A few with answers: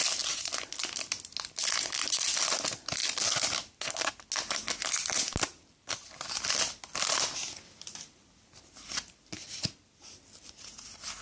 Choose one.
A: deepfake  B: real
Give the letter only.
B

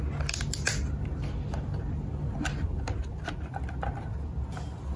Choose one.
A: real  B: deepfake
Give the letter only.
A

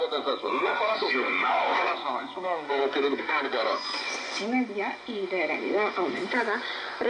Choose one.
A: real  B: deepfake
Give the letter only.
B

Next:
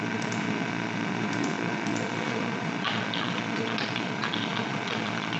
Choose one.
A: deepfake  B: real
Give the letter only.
A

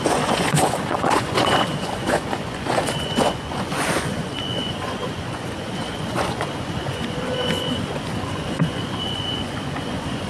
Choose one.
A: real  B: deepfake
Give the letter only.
B